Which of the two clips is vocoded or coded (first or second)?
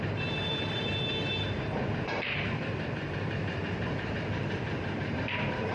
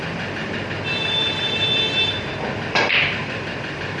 first